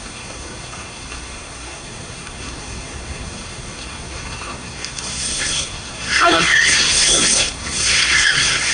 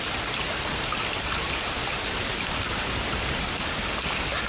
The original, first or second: second